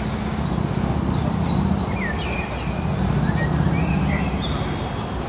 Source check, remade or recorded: recorded